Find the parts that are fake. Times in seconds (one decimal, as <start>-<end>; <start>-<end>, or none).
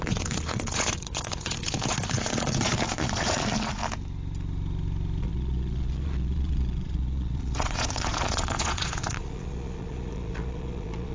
0.0-3.8; 5.2-11.1